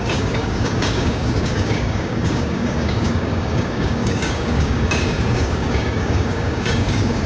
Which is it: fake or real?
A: fake